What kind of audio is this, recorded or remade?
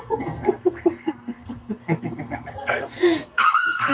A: remade